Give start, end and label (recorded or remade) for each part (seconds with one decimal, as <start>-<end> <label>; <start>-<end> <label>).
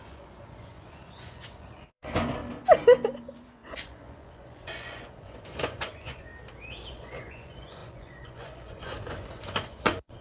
0.0-2.4 remade; 2.4-3.2 recorded; 3.2-6.3 remade; 6.3-6.9 recorded; 6.9-10.2 remade